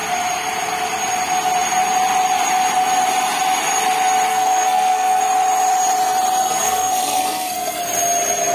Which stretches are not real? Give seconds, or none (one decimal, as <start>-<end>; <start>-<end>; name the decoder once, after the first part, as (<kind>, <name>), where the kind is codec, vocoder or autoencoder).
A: 4.3-5.2 (codec, SNAC); 6.4-7.8